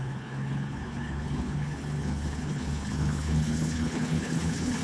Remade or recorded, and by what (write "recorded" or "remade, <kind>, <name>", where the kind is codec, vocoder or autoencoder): remade, codec, HILCodec